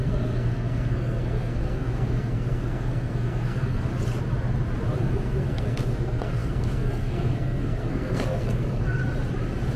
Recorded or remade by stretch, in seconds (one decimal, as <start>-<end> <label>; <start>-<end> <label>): 0.0-3.9 remade; 3.9-5.0 recorded; 5.0-9.0 remade; 9.0-9.8 recorded